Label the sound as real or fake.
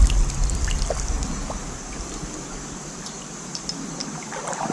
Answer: real